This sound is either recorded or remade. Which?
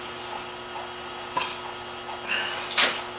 recorded